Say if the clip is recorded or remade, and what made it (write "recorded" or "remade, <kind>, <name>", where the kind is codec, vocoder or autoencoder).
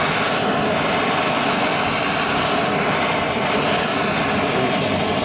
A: recorded